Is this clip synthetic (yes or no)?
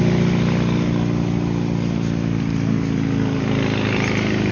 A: no